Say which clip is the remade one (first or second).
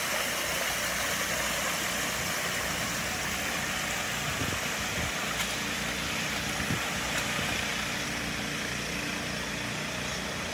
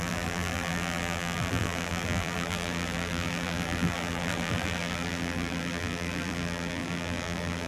second